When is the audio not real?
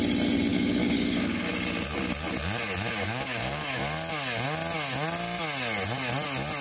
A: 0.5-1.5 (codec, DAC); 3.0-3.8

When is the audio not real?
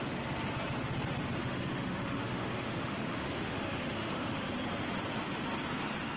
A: 1.4-4.5 (autoencoder, DAC-VAE)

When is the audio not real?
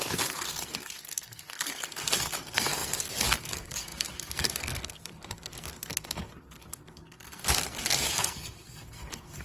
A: 0.0-9.4 (codec, SNAC)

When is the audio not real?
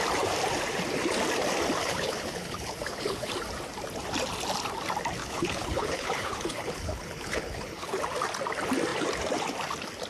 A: 1.8-3.3 (codec, HILCodec); 5.2-8.0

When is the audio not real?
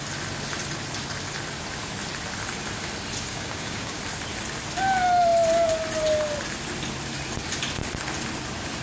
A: 3.3-4.0 (codec, DAC)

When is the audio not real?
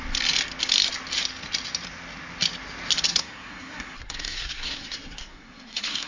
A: 3.1-6.1 (codec, SNAC)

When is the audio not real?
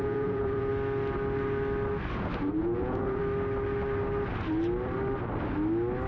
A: 0.0-0.7 (vocoder, Vocos); 2.4-3.2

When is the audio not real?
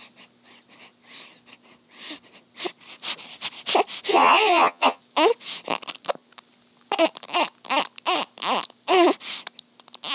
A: 4.1-5.0 (vocoder, HiFi-GAN)